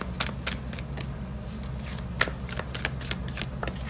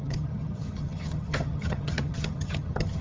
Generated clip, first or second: second